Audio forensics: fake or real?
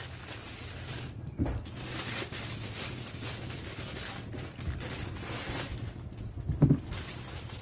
real